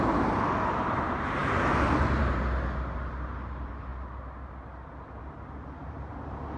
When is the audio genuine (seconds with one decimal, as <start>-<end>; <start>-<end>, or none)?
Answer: 0.0-6.6